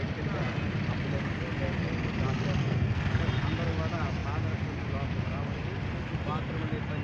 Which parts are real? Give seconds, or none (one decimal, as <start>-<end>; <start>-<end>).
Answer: 0.0-2.6; 3.2-7.0